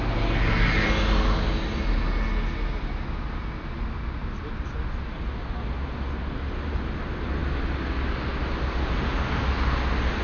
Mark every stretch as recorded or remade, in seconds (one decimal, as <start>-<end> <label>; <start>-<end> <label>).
0.0-10.2 recorded